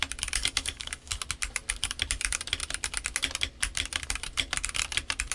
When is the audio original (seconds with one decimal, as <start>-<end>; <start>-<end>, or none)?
0.0-0.4; 1.1-5.3